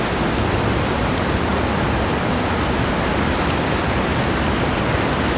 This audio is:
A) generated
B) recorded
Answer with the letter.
B